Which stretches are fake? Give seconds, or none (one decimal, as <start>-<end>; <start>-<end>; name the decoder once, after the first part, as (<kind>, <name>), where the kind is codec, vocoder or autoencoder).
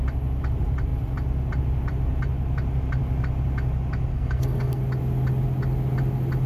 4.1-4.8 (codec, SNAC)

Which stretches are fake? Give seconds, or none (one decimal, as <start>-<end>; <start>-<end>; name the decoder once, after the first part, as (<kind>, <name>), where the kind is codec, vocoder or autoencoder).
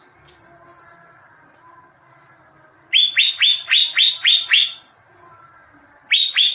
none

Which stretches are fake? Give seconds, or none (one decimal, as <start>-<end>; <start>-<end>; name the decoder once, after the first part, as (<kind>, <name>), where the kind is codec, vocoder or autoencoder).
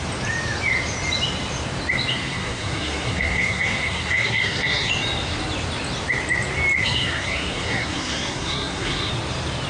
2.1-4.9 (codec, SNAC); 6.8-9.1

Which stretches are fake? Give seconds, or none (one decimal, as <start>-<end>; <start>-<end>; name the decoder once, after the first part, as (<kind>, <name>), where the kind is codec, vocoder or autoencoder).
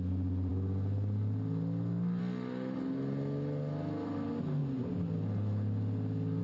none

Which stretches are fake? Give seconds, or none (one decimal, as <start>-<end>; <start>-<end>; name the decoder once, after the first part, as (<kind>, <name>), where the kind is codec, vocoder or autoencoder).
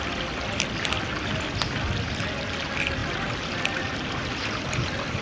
none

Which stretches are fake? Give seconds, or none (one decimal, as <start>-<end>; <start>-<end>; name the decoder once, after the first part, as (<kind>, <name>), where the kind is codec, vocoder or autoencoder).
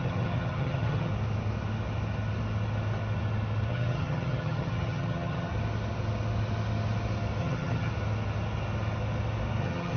0.0-1.1 (vocoder, HiFi-GAN); 3.7-5.5; 7.4-7.9; 9.6-10.0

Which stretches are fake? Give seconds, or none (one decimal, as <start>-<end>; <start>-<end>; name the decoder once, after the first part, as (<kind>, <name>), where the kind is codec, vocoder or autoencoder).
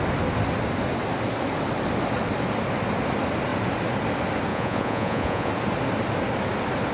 4.5-5.5 (vocoder, Vocos)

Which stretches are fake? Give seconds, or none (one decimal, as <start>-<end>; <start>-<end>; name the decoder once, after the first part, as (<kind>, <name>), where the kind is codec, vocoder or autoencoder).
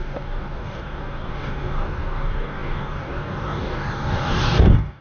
0.0-5.0 (codec, DAC)